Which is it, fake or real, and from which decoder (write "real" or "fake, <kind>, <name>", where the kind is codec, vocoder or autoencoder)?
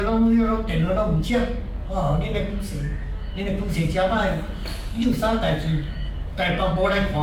fake, codec, DAC